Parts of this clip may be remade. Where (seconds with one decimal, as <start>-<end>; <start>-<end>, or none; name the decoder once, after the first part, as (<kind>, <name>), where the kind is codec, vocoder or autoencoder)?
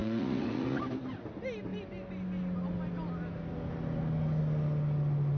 0.0-0.8 (vocoder, Vocos)